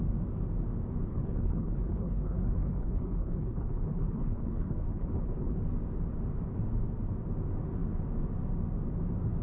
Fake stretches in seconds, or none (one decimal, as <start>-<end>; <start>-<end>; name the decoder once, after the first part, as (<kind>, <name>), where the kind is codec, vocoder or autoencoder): 1.1-5.6 (codec, HILCodec)